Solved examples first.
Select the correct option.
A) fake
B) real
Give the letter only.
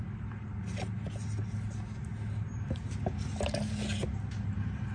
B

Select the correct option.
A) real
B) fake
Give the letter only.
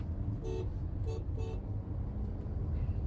A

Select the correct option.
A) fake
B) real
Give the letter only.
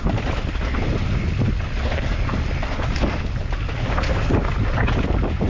B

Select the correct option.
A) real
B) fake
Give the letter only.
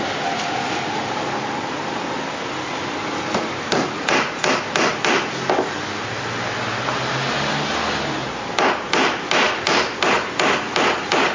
A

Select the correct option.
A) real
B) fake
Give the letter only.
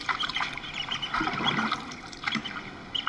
A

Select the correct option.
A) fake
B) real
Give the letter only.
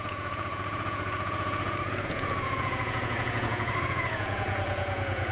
A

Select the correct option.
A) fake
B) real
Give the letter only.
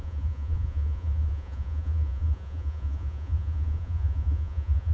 A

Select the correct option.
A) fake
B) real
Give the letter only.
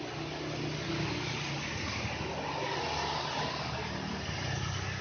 B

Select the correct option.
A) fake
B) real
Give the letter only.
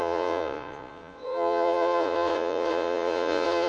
A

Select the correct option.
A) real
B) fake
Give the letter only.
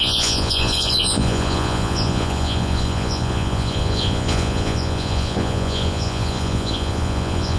B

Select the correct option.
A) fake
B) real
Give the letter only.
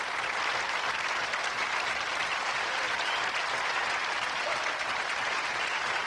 B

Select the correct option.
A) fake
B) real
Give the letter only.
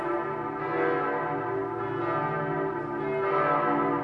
B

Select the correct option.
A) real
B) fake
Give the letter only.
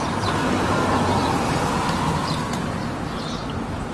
A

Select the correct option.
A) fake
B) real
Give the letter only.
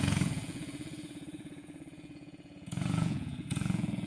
A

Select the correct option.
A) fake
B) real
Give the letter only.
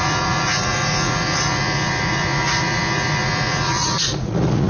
A